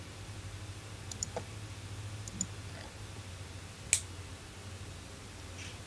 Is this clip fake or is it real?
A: real